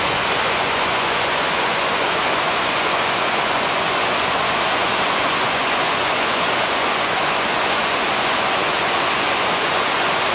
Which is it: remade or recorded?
remade